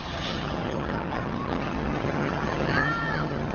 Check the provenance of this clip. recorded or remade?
remade